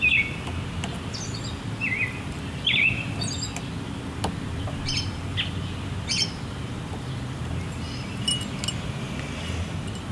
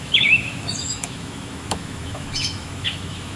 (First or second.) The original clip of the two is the first